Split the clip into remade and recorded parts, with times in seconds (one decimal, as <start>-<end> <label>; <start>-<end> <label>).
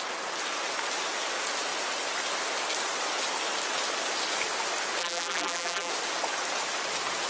0.0-5.0 recorded; 5.0-5.9 remade; 5.9-7.3 recorded